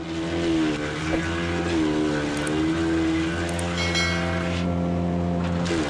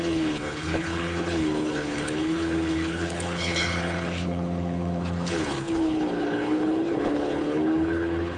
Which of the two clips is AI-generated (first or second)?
second